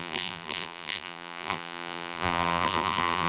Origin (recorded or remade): remade